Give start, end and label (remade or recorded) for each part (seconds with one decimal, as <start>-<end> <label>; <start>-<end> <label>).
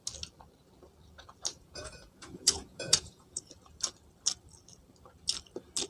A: 0.0-1.5 recorded; 1.5-3.5 remade; 3.5-5.9 recorded